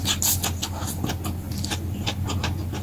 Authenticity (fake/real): real